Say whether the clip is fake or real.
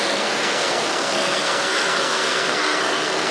fake